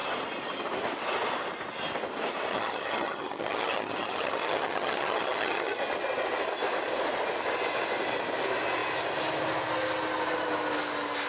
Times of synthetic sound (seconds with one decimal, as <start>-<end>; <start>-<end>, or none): 2.5-5.8